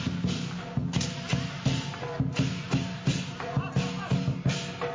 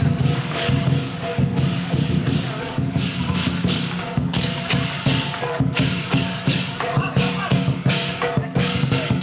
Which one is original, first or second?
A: first